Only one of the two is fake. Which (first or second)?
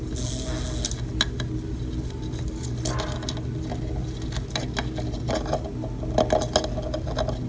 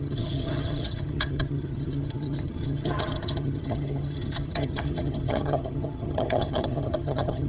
second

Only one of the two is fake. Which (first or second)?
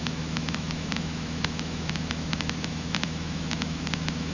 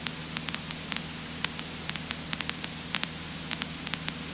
first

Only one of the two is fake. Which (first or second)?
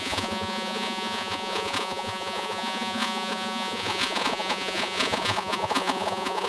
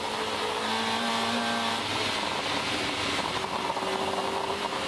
first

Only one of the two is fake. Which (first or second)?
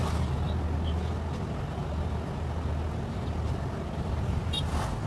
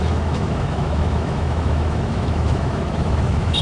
second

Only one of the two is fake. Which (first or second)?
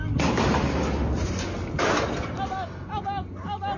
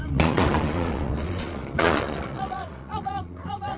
second